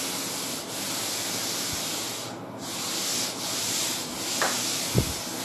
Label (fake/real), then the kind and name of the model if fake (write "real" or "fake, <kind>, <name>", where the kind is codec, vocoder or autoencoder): real